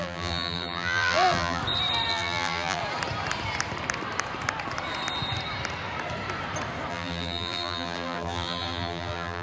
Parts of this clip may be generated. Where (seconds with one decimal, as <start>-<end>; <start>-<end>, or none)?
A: 0.0-1.6; 2.1-2.8; 6.9-9.4